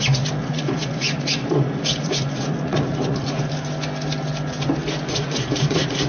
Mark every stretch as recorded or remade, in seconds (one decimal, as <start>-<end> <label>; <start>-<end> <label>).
0.0-0.4 recorded; 0.4-3.5 remade; 3.5-5.1 recorded; 5.1-6.1 remade